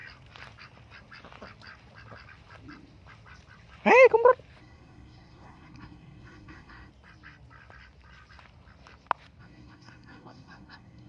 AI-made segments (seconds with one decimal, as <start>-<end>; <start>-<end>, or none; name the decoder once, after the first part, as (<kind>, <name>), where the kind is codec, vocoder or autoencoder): 4.6-6.9 (codec, SNAC); 9.4-11.1